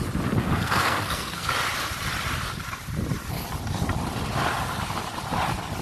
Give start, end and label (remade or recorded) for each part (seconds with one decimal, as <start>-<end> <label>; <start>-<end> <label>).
0.0-0.4 recorded; 0.4-1.5 remade; 1.5-5.8 recorded